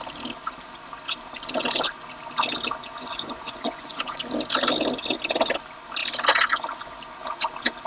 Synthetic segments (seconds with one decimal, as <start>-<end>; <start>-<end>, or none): 2.8-4.2